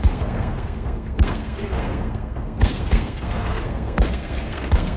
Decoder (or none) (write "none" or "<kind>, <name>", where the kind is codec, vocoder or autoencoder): codec, SNAC